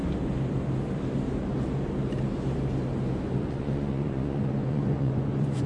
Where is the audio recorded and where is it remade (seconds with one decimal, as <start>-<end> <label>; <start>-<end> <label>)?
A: 0.0-3.4 recorded; 3.4-5.7 remade